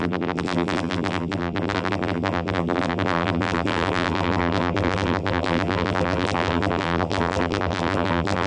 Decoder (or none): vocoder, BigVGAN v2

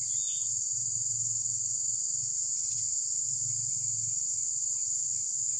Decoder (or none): none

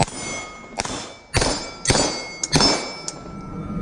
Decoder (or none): none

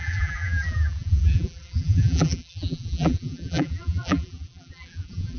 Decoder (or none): vocoder, BigVGAN v2